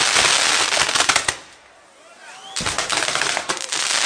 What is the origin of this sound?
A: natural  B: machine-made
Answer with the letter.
A